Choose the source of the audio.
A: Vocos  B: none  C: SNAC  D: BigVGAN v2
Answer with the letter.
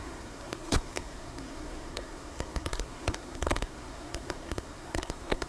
C